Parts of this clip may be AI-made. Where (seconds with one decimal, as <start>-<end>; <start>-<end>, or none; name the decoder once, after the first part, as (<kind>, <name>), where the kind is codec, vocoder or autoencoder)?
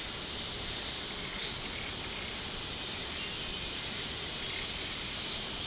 none